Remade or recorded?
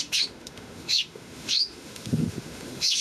remade